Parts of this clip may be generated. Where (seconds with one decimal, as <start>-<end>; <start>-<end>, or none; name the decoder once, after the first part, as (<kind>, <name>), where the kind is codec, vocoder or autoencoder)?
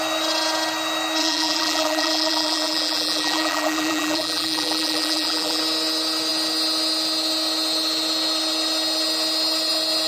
1.2-5.6 (vocoder, BigVGAN v2)